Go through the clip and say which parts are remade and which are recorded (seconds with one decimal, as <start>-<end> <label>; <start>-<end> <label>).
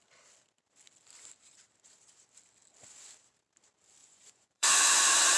0.0-4.0 recorded; 4.0-5.0 remade; 5.0-5.4 recorded